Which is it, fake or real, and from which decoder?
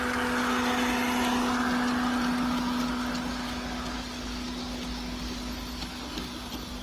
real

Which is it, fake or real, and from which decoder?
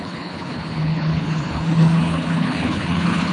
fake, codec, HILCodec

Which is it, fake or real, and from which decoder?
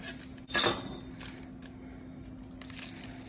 real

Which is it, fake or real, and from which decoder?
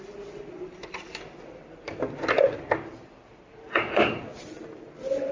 fake, vocoder, BigVGAN v2